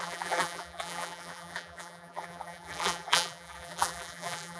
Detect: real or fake fake